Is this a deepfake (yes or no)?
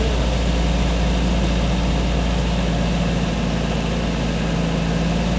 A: no